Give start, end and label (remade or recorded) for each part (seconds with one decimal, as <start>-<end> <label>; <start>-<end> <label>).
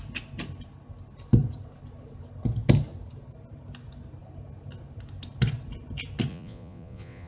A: 0.0-6.3 recorded; 6.3-7.3 remade